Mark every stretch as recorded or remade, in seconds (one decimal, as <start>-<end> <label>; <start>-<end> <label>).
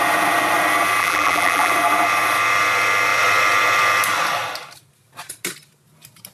0.0-1.0 recorded; 1.0-1.7 remade; 1.7-6.3 recorded